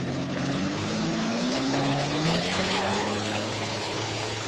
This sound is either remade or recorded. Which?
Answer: remade